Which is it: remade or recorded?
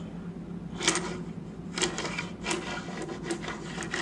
recorded